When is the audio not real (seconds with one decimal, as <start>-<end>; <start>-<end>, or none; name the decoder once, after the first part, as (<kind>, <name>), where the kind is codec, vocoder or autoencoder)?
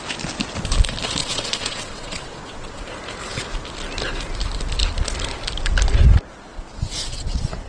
1.2-2.8 (vocoder, WaveNeXt); 6.5-7.7